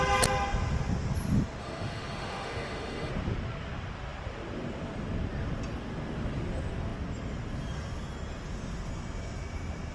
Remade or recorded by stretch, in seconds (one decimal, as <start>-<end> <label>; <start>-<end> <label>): 0.0-1.6 recorded; 1.6-3.1 remade; 3.1-9.9 recorded